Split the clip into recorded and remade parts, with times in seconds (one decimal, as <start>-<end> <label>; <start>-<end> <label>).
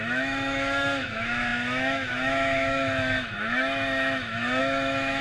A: 0.0-5.2 remade